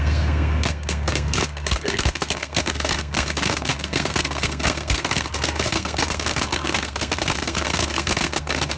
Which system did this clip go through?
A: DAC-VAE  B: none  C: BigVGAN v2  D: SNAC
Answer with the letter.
D